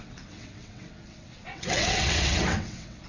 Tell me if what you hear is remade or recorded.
remade